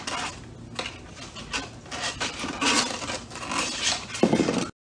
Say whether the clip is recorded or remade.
recorded